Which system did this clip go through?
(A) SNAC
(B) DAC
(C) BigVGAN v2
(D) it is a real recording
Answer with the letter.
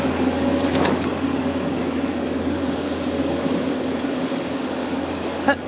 B